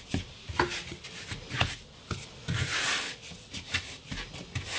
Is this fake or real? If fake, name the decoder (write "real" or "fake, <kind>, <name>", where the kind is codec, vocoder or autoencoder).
real